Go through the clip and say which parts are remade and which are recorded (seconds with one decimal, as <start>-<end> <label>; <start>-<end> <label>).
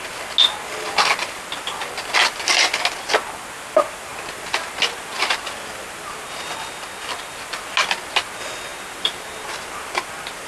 0.0-8.7 recorded; 8.7-10.5 remade